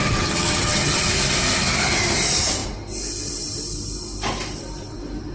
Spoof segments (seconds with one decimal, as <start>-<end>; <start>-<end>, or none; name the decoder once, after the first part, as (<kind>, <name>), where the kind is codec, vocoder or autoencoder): 0.0-1.1 (vocoder, HiFi-GAN)